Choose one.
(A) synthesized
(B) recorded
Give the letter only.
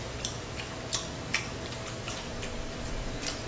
B